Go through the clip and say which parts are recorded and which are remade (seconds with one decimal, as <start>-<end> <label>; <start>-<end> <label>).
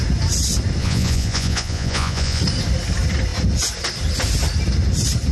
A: 0.0-0.8 recorded; 0.8-2.4 remade; 2.4-5.3 recorded